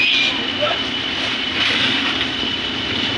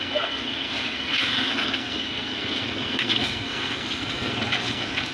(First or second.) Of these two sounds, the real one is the first